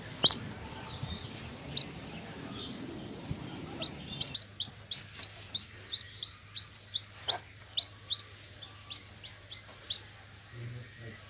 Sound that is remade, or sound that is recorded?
recorded